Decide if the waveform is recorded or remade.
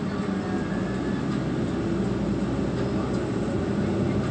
recorded